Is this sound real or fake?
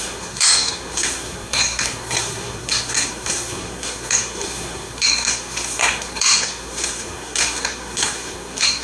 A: fake